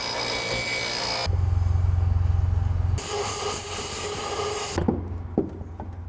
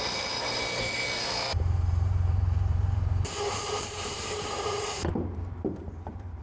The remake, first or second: second